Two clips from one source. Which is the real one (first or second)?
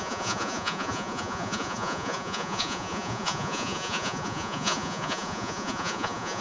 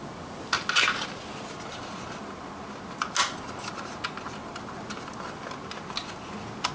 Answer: second